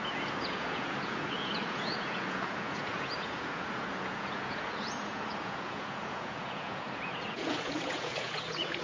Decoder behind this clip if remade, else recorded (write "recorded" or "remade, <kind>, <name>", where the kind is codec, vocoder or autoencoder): remade, vocoder, Vocos